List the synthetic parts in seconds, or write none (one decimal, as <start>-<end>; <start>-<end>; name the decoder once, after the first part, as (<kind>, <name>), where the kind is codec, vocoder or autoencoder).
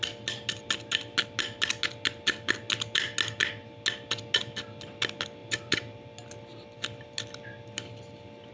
none